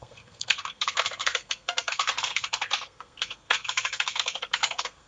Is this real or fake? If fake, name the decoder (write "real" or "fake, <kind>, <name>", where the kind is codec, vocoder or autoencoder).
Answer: fake, codec, SNAC